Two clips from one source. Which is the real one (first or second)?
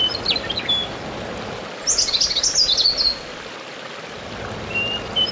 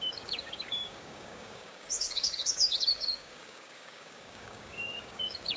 first